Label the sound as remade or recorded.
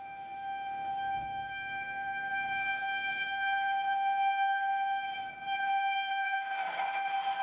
remade